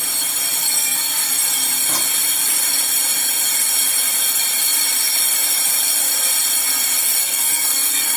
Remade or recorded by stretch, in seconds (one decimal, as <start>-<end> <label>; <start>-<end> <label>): 0.0-0.6 recorded; 0.6-1.4 remade; 1.4-7.2 recorded; 7.2-8.2 remade